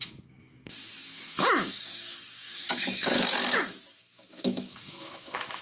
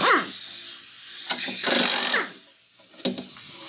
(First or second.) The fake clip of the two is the first